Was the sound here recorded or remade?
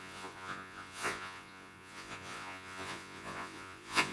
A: remade